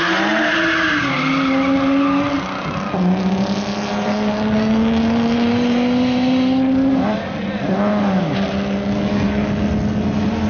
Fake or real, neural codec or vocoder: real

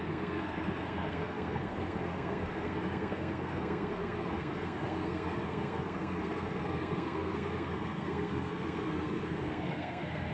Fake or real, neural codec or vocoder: fake, codec, SNAC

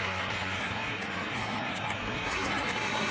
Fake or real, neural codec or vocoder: fake, codec, SNAC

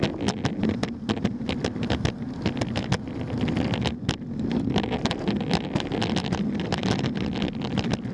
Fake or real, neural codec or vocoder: real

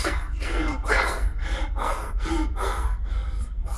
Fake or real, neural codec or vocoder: fake, codec, SNAC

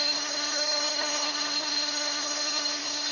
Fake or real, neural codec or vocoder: fake, codec, SNAC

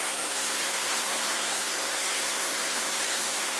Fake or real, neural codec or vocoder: fake, codec, SNAC